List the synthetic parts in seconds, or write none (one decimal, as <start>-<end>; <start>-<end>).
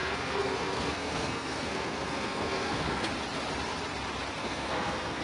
0.0-3.1; 4.4-5.2